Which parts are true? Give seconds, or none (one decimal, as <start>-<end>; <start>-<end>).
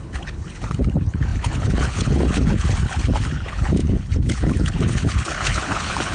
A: none